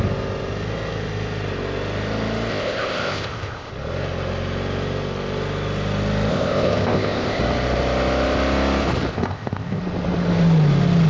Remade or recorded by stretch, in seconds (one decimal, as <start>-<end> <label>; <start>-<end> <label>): 0.0-2.5 recorded; 2.5-3.7 remade; 3.7-6.3 recorded; 6.3-7.4 remade; 7.4-9.1 recorded; 9.1-9.8 remade; 9.8-11.1 recorded